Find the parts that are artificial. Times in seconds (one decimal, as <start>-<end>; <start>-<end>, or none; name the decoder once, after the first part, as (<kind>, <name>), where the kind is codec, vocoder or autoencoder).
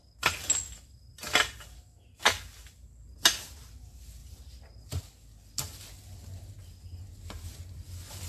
4.2-5.0 (vocoder, BigVGAN v2)